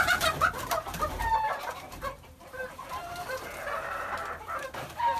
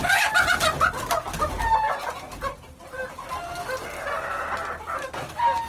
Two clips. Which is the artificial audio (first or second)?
first